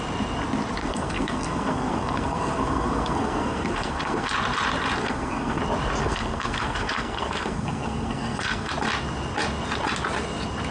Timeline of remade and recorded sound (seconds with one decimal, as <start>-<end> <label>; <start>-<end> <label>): 0.0-0.8 recorded; 0.8-4.3 remade; 4.3-5.0 recorded; 5.0-5.6 remade; 5.6-6.0 recorded; 6.0-8.7 remade; 8.7-10.7 recorded